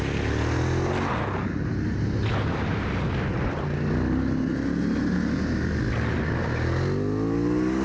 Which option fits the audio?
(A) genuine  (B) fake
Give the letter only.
A